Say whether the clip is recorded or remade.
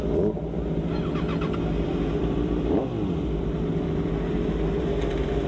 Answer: recorded